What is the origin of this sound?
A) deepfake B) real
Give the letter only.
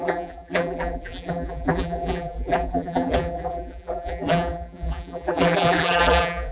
A